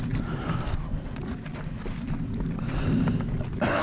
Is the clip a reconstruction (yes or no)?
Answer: no